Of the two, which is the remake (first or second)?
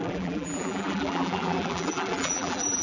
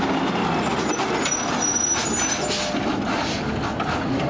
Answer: first